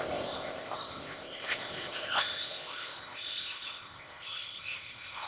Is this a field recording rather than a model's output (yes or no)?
no